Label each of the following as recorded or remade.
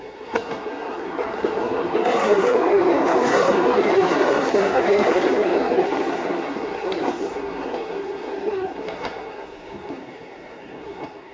remade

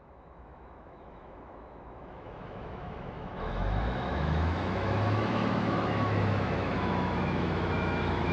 remade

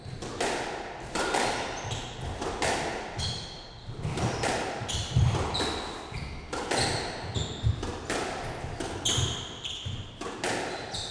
recorded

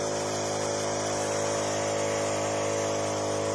recorded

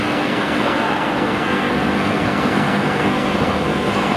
remade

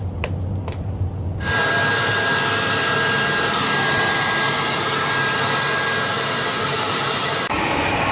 recorded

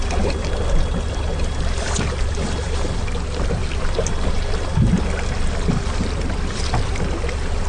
recorded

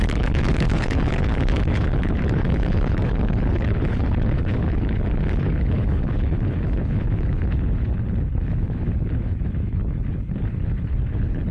remade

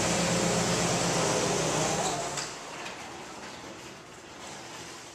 recorded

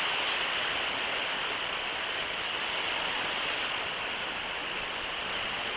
recorded